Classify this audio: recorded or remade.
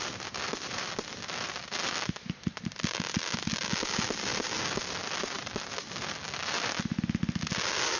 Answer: recorded